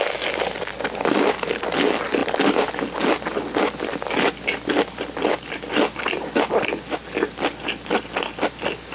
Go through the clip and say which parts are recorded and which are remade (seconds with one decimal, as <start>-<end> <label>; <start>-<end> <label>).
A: 0.0-8.9 recorded